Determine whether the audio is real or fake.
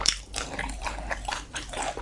fake